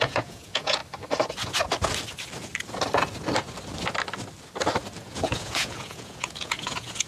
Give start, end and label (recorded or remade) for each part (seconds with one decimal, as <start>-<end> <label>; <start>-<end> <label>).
0.0-0.8 remade; 0.8-5.0 recorded; 5.0-7.1 remade